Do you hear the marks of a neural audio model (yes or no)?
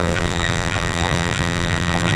yes